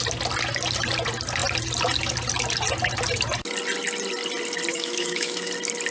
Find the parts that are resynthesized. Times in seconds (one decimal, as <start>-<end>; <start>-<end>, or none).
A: 4.7-5.5